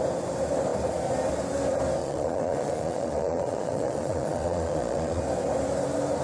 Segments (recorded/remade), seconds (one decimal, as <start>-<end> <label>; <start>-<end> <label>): 0.0-2.0 recorded; 2.0-5.2 remade; 5.2-6.2 recorded